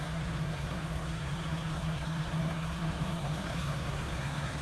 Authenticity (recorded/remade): remade